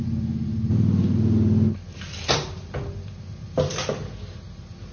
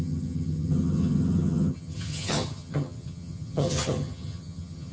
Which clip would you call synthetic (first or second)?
second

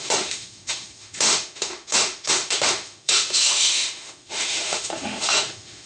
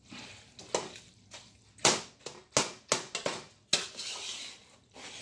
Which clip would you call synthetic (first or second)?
first